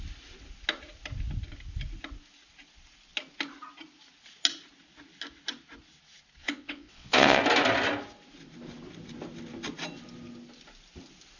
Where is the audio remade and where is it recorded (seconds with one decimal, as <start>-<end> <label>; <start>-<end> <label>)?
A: 0.0-6.4 recorded; 6.4-7.4 remade; 7.4-11.4 recorded